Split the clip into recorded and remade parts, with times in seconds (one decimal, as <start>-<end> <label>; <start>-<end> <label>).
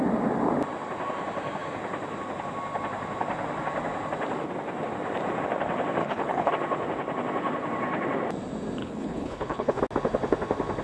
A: 0.0-6.0 recorded; 6.0-6.5 remade; 6.5-8.8 recorded; 8.8-9.8 remade; 9.8-10.8 recorded